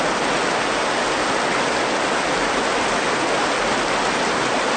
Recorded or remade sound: recorded